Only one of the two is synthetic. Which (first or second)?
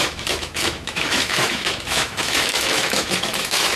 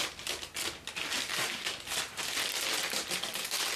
first